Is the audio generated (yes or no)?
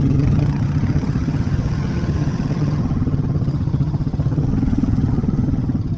yes